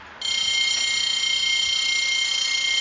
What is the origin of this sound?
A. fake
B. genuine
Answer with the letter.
B